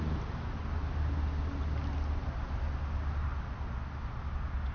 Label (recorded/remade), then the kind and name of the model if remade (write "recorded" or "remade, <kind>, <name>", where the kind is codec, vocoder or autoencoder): recorded